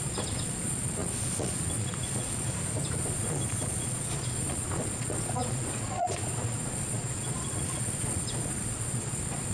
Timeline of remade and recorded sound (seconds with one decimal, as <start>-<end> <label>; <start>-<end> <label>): 0.0-2.5 remade; 2.5-3.0 recorded; 3.0-9.5 remade